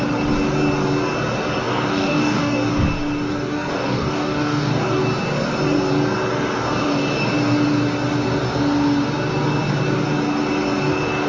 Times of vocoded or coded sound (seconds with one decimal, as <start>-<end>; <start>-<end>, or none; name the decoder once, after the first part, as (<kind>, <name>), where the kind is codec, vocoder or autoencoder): 1.6-2.7 (codec, DAC); 3.3-5.0